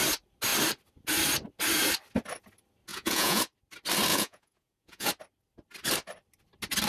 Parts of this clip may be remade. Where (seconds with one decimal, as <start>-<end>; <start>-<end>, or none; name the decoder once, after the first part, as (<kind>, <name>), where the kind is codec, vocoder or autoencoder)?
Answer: 2.9-3.4 (vocoder, Vocos); 4.1-5.1